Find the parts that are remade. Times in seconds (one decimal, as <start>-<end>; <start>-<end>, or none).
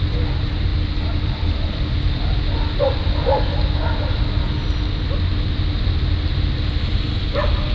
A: none